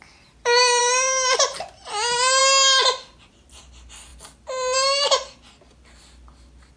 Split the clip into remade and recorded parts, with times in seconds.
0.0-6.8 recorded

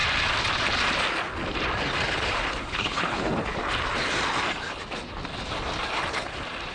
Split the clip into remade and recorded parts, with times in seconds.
0.0-2.6 recorded; 2.6-3.6 remade; 3.6-6.7 recorded

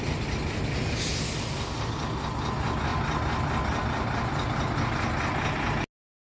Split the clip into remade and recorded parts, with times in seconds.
0.0-6.3 recorded

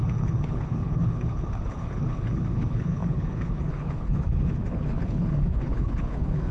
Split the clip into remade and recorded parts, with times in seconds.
0.0-6.5 remade

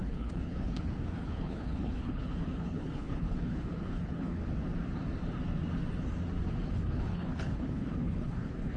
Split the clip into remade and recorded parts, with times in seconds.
0.0-4.4 remade; 4.4-6.7 recorded; 6.7-8.8 remade

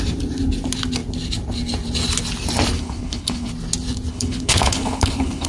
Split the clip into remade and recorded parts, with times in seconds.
0.0-2.8 recorded; 2.8-3.5 remade; 3.5-4.1 recorded; 4.1-5.5 remade

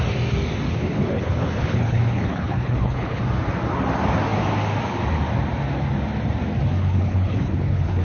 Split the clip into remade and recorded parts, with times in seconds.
0.0-0.7 recorded; 0.7-3.2 remade; 3.2-6.8 recorded; 6.8-8.0 remade

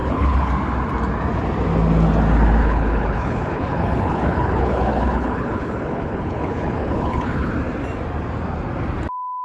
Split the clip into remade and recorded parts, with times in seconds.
0.0-0.5 remade; 0.5-2.6 recorded; 2.6-7.5 remade; 7.5-9.4 recorded